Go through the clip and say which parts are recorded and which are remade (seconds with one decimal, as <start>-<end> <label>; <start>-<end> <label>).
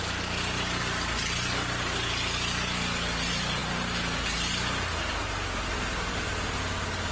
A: 0.0-7.1 recorded